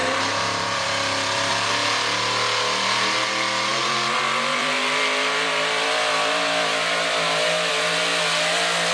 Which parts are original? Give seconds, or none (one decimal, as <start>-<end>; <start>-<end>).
1.7-3.7; 7.7-8.9